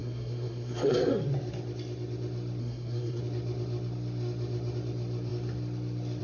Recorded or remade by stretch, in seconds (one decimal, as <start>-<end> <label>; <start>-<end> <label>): 0.0-1.1 remade; 1.1-2.6 recorded; 2.6-3.2 remade; 3.2-6.2 recorded